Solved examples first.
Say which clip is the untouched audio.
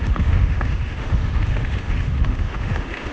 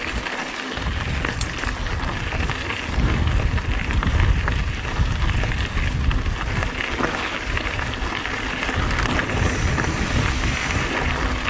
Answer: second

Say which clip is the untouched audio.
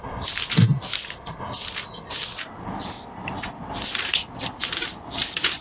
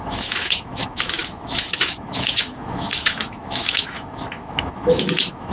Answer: first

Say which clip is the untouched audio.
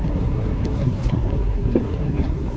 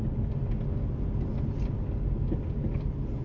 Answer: second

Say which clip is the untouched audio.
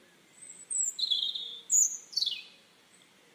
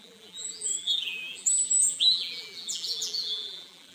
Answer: first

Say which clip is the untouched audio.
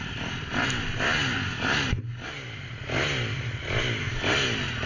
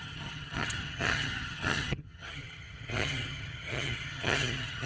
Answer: first